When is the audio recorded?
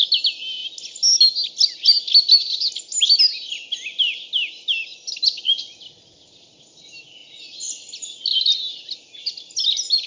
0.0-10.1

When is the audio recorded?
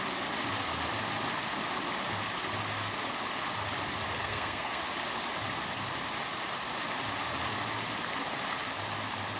0.0-4.2; 4.8-9.4